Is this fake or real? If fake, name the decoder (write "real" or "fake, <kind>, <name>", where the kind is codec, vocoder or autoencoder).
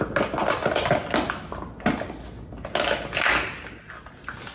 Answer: real